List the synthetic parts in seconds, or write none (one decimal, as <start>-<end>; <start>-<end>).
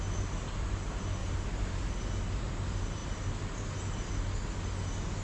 1.2-1.9